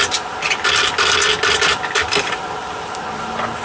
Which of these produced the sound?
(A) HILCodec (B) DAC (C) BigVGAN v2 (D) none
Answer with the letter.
D